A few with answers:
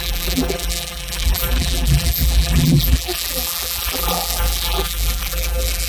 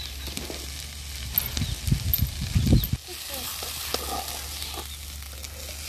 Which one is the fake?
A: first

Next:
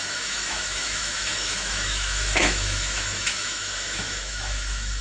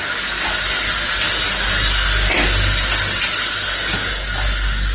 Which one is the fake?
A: first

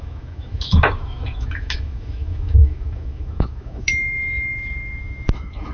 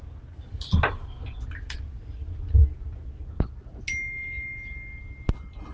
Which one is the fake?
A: first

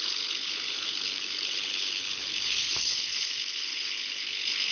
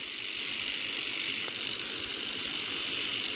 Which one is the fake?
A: first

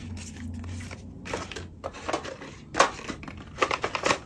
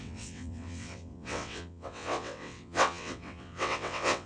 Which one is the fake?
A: second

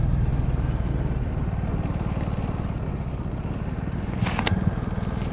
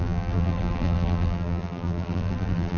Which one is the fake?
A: second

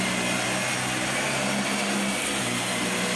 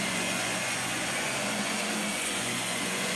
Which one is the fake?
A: second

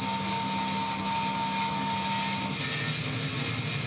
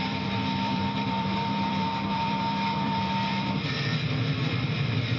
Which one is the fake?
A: second